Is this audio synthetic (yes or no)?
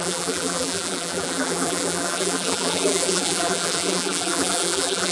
yes